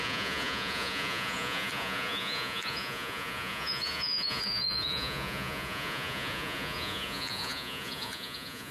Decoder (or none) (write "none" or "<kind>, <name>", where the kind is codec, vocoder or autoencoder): vocoder, Vocos